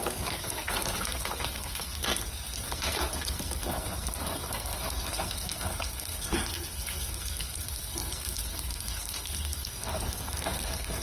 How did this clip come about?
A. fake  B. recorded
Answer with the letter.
A